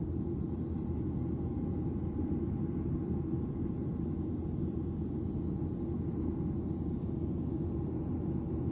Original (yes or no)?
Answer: yes